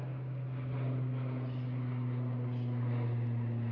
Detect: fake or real real